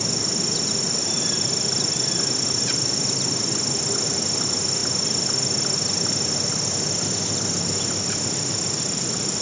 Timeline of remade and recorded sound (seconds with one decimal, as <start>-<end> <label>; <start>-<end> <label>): 0.0-9.4 recorded